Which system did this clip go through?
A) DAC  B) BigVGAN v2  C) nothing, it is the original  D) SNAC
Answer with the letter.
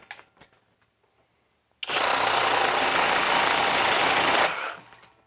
C